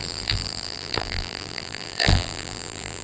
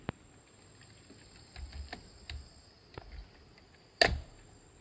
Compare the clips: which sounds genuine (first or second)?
second